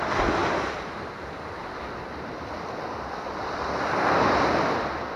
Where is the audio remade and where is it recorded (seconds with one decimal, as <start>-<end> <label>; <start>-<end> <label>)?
0.0-5.2 recorded

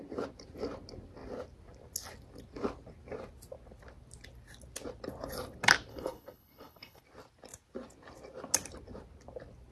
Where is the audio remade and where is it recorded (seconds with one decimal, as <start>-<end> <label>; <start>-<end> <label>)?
0.0-5.9 recorded; 5.9-7.0 remade; 7.0-9.7 recorded